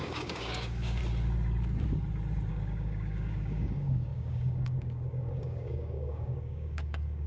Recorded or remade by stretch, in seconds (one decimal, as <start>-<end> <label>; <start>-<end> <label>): 0.0-1.0 remade; 1.0-2.5 recorded; 2.5-7.3 remade